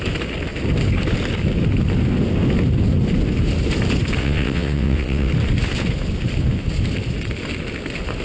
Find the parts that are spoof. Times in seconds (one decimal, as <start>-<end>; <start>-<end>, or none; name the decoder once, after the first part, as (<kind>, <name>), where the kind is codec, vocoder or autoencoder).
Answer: 4.2-5.3 (vocoder, WaveNeXt)